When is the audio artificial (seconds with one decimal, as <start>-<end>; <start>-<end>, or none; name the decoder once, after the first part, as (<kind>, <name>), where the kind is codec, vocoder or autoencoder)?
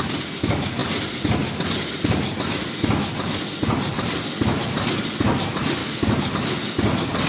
5.8-6.3 (codec, DAC)